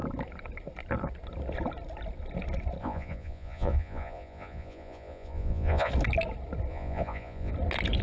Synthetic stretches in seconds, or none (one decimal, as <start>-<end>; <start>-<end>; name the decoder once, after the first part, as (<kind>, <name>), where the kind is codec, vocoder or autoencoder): 2.8-5.9 (vocoder, Vocos); 6.7-7.5

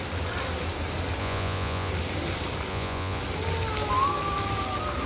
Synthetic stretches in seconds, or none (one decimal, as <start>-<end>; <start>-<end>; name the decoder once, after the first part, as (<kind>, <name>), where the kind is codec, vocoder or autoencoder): 1.2-1.9 (vocoder, Vocos); 2.7-3.2

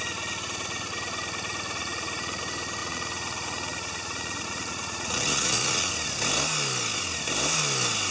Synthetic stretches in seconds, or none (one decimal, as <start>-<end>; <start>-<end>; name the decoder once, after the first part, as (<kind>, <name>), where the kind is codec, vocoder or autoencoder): 1.8-2.4 (vocoder, Vocos); 2.8-5.9

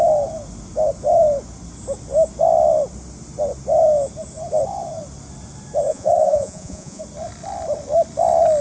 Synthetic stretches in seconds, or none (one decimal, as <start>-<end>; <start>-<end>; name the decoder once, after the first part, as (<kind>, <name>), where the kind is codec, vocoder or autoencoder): 5.9-7.0 (vocoder, Vocos)

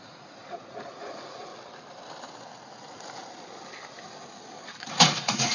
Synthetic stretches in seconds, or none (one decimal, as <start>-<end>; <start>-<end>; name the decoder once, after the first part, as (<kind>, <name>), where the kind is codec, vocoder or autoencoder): 0.0-1.5 (vocoder, Vocos); 4.8-5.5

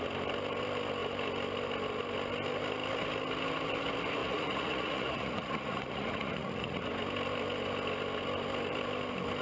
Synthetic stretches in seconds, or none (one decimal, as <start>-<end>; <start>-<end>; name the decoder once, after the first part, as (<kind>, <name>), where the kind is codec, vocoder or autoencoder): 4.2-6.9 (vocoder, Vocos)

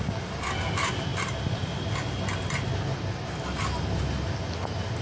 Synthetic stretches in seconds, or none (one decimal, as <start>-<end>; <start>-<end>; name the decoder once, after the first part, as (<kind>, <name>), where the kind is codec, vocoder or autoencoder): none

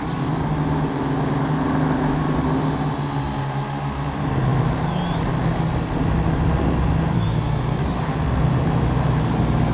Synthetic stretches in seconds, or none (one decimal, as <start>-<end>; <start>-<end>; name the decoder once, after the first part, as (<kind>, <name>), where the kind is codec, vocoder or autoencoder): none